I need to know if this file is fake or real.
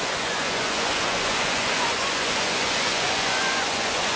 fake